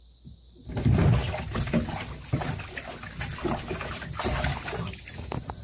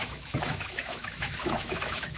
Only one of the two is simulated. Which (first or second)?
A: second